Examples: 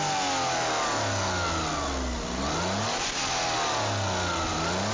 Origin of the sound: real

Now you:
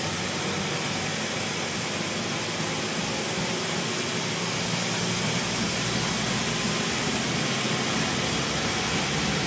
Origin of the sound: real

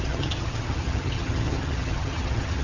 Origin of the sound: fake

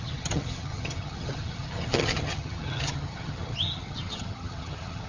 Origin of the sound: fake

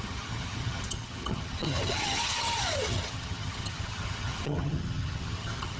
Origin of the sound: fake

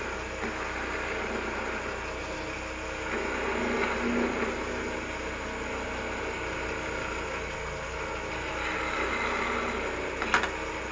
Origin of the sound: real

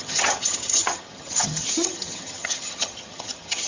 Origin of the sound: fake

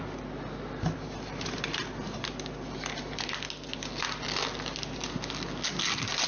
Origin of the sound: real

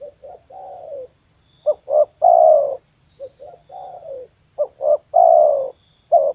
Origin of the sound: real